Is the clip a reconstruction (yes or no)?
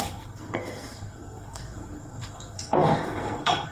yes